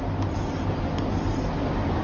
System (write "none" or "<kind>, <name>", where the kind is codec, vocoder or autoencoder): none